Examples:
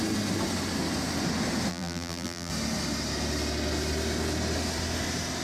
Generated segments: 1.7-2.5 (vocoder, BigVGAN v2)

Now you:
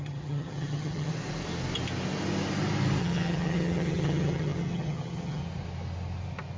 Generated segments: 0.0-1.1 (vocoder, HiFi-GAN); 3.0-5.4